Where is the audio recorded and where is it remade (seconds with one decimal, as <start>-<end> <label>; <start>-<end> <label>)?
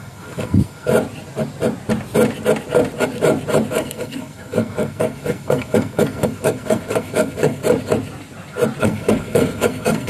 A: 0.0-0.9 remade; 0.9-3.7 recorded; 3.7-7.6 remade; 7.6-8.8 recorded; 8.8-10.1 remade